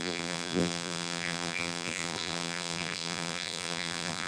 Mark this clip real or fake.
fake